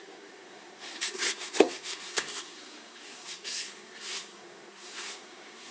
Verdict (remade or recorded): remade